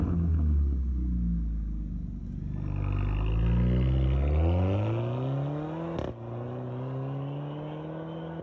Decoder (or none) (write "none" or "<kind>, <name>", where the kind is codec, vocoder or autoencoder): none